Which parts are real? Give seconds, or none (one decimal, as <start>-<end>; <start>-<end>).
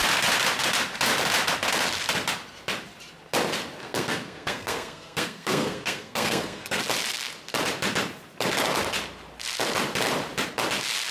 0.0-3.8; 6.8-11.1